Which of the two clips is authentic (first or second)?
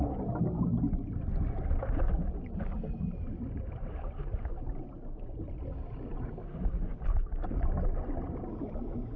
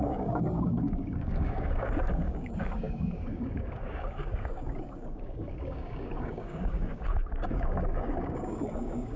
first